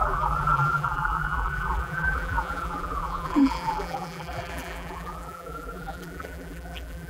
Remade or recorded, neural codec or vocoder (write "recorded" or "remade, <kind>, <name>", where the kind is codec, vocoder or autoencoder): remade, vocoder, BigVGAN v2